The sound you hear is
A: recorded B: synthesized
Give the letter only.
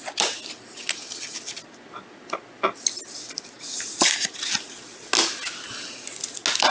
A